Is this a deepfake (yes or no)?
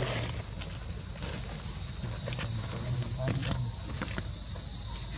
no